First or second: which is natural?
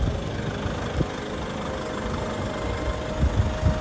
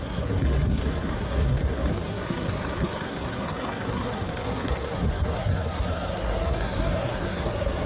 first